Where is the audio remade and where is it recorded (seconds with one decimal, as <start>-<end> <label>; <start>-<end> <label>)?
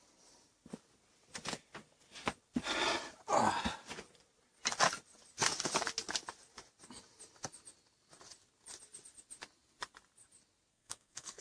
0.0-10.7 recorded; 10.7-11.4 remade